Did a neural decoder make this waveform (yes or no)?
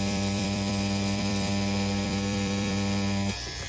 yes